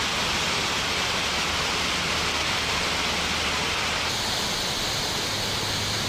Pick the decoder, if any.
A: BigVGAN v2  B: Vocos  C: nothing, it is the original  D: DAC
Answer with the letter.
C